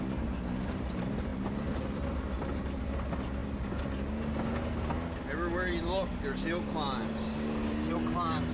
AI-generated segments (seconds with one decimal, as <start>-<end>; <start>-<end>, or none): none